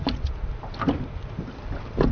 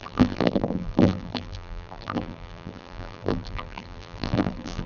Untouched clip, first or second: first